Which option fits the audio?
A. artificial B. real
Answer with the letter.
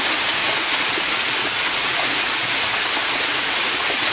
A